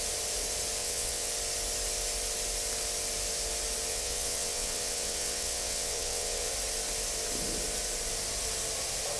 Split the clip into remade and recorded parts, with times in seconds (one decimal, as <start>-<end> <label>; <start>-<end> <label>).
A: 0.0-0.8 recorded; 0.8-1.3 remade; 1.3-3.9 recorded; 3.9-6.5 remade; 6.5-9.2 recorded